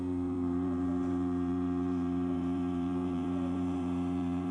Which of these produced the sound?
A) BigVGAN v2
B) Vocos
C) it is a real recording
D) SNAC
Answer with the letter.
A